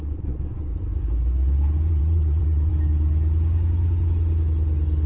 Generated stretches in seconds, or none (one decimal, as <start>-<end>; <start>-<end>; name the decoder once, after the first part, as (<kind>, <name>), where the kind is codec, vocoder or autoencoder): 0.0-0.7 (vocoder, WaveNeXt); 1.9-2.7